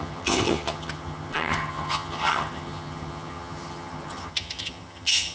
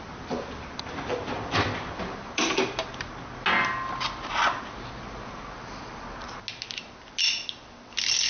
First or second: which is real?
second